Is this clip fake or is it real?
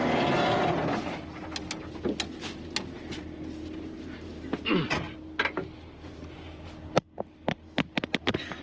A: real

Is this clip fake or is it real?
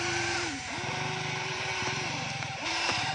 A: fake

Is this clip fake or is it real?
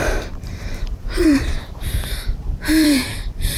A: fake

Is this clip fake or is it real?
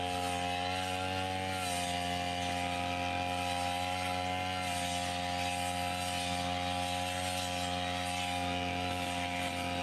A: real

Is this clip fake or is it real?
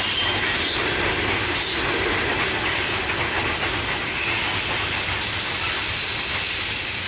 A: real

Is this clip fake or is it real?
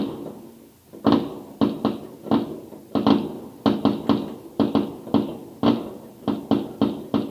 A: real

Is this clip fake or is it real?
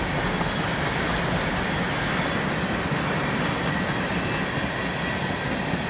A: real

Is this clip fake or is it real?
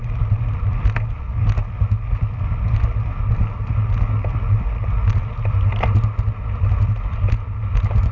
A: real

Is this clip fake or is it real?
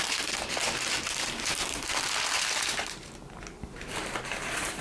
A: real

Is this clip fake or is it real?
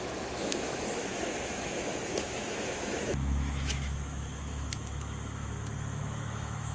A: fake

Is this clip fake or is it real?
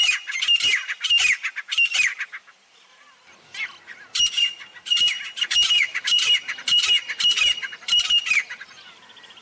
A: fake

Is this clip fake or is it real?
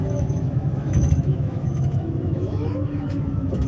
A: fake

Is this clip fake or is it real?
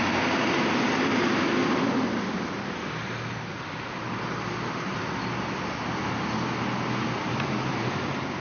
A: real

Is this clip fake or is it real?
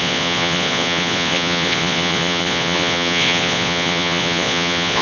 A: fake